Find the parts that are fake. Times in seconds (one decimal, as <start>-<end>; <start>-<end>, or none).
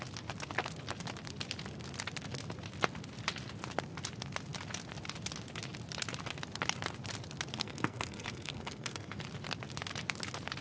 7.6-9.2